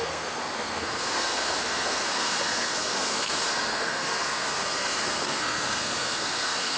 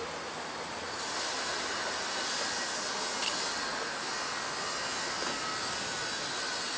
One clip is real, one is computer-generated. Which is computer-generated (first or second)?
first